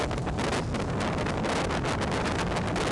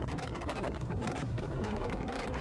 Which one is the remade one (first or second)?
second